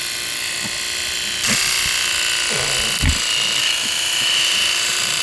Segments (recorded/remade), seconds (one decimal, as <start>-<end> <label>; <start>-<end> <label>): 0.0-3.6 recorded; 3.6-5.2 remade